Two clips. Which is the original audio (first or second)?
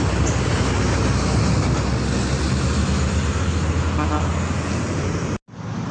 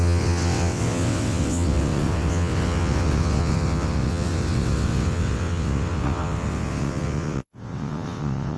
first